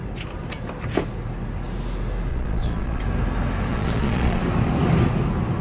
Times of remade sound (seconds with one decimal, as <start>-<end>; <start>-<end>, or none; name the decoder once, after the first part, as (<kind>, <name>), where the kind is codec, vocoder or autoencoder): 2.3-3.0 (vocoder, Vocos); 3.7-4.4